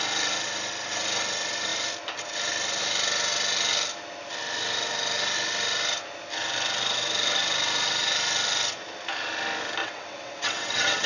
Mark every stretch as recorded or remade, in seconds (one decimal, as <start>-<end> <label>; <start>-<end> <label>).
0.0-9.8 recorded; 9.8-11.1 remade